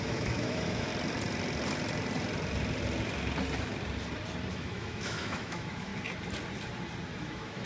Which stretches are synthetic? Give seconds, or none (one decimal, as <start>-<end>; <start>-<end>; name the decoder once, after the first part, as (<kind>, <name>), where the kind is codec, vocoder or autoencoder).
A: 0.0-0.9 (autoencoder, DAC-VAE); 4.5-5.9; 7.2-7.7